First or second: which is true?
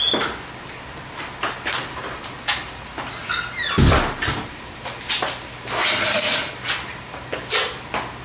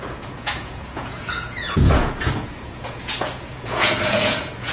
first